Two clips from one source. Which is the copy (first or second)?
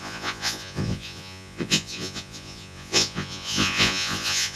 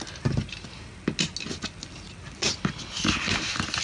first